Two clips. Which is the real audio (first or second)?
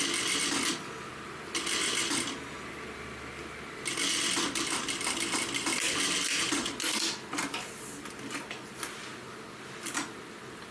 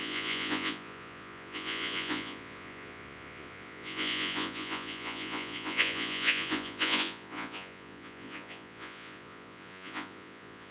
first